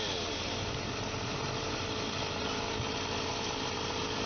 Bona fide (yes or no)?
yes